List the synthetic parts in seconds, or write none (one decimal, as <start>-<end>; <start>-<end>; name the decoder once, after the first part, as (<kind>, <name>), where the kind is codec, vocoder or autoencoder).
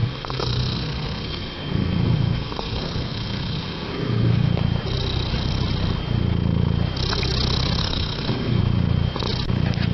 0.0-4.5 (codec, SNAC); 7.8-8.6